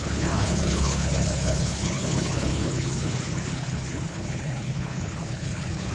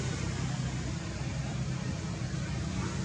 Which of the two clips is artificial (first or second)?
first